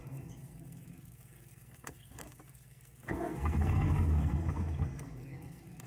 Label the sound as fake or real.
fake